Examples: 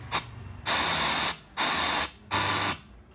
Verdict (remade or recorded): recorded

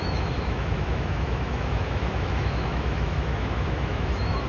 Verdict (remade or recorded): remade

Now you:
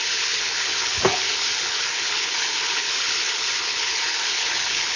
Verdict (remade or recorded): remade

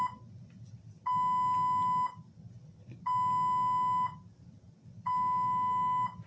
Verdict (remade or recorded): recorded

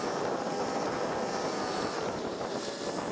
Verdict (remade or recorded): recorded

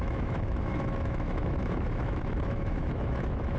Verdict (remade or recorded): remade